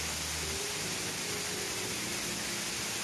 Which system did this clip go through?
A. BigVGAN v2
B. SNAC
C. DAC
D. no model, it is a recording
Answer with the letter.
D